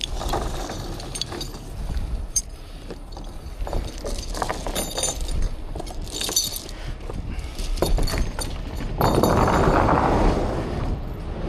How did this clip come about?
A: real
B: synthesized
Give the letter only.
B